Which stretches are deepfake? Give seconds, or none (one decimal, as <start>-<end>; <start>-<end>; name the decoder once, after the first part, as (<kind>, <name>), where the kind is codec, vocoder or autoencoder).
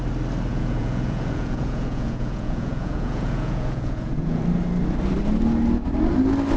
0.5-4.4 (vocoder, Vocos)